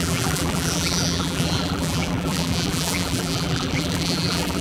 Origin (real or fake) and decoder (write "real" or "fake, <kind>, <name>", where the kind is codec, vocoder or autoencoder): fake, vocoder, BigVGAN v2